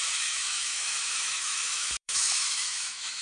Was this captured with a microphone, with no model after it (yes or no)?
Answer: no